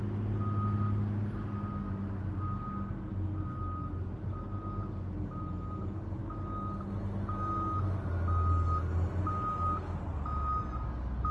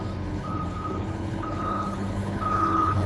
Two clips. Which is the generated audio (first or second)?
second